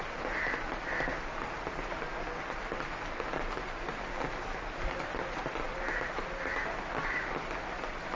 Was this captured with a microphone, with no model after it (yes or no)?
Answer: yes